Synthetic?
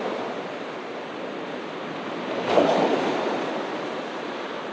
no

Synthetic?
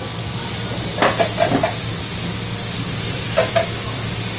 no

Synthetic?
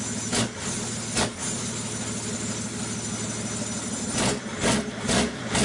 no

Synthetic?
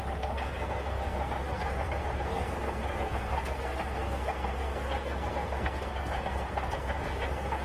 yes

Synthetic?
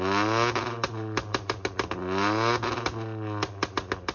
no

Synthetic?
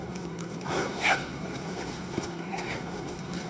yes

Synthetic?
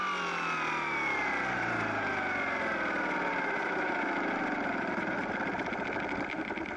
no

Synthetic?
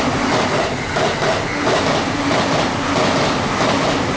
no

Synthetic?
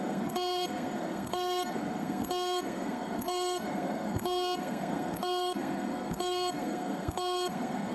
yes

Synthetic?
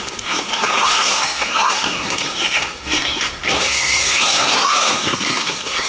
yes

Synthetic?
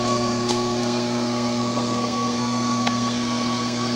yes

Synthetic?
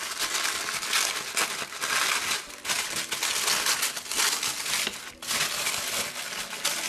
no